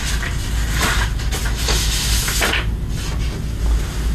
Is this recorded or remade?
recorded